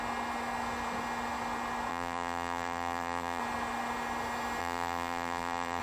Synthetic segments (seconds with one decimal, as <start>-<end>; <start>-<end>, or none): 1.9-3.4; 4.6-5.8